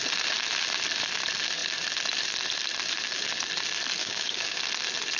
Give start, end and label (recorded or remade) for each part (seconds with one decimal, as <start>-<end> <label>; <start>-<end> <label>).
0.0-4.0 recorded; 4.0-4.6 remade; 4.6-5.2 recorded